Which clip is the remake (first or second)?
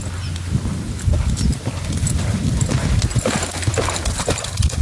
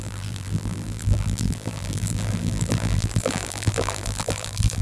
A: second